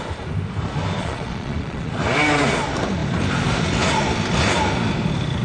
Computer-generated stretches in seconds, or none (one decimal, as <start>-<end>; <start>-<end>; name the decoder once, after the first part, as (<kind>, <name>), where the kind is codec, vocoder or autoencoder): 1.0-1.9 (vocoder, Vocos)

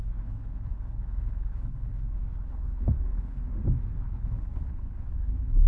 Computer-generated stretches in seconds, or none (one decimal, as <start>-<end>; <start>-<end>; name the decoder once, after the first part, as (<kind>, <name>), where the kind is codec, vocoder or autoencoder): 0.0-3.4 (codec, HILCodec); 4.0-5.7

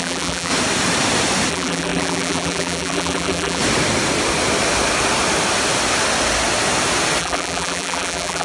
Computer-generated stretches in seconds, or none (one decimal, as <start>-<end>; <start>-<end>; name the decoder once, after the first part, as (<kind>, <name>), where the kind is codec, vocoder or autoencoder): 0.0-0.5 (vocoder, BigVGAN v2); 1.5-3.6; 7.2-8.4